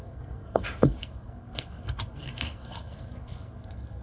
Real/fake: fake